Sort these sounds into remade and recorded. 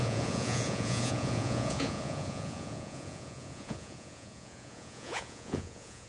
remade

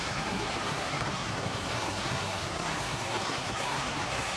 remade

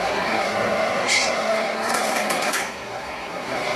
remade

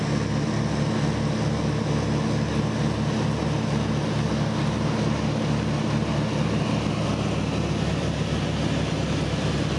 recorded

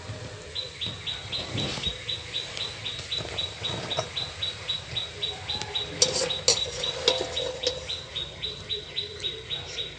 recorded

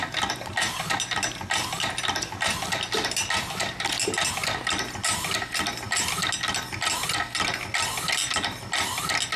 recorded